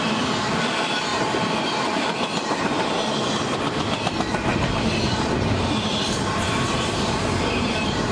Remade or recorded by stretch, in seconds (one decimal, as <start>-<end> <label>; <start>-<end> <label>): 0.0-1.1 recorded; 1.1-1.9 remade; 1.9-4.5 recorded; 4.5-8.1 remade